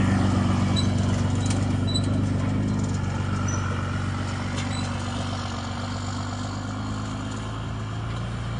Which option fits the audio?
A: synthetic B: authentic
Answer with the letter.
B